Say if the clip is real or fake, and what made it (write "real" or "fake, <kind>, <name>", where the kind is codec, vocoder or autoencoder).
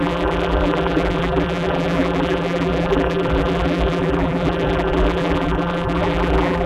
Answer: fake, vocoder, BigVGAN v2